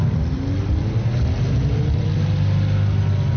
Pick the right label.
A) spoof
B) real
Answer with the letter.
B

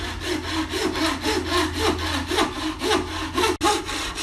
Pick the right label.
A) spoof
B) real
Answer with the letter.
B